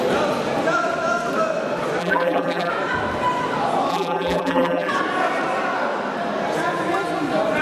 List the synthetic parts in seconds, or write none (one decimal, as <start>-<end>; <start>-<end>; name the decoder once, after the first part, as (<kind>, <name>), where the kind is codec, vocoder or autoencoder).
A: 2.0-2.7 (vocoder, BigVGAN v2); 3.9-4.9